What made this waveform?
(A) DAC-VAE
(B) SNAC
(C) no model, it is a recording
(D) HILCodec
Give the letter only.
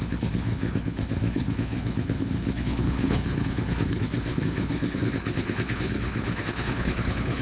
D